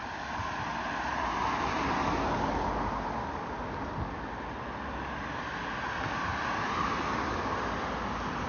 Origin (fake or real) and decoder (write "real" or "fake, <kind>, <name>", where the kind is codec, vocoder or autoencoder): real